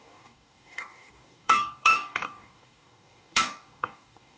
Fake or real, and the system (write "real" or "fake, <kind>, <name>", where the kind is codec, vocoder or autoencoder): fake, codec, DAC